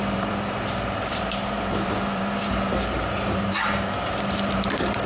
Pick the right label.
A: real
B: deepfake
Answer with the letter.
B